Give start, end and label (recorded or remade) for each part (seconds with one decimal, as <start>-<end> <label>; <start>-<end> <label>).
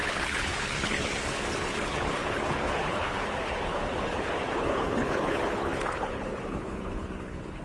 0.0-7.6 remade